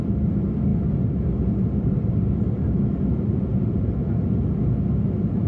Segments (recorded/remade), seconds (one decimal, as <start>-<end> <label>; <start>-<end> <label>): 0.0-5.5 recorded